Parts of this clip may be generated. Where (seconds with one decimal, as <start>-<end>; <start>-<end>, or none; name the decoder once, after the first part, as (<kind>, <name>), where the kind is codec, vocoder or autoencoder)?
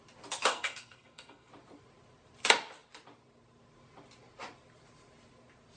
0.5-1.5 (codec, SNAC)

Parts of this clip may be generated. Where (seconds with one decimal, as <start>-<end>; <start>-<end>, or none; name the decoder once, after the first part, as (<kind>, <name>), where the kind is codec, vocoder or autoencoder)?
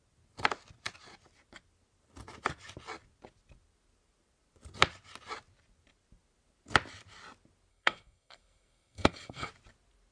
7.7-9.5 (codec, SNAC)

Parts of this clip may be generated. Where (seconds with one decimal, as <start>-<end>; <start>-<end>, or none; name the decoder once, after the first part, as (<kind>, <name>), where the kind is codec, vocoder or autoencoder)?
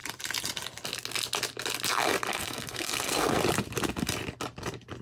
2.3-3.4 (codec, SNAC)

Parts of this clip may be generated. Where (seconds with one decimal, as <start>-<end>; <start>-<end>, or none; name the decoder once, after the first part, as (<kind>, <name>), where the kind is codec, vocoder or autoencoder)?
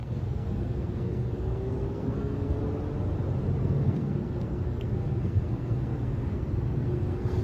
0.0-2.6 (codec, SNAC); 3.6-7.4